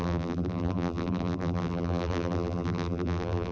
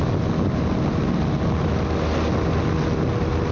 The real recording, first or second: second